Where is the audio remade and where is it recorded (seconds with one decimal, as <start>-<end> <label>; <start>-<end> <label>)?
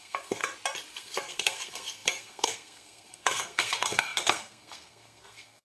0.0-0.4 remade; 0.4-0.9 recorded; 0.9-5.6 remade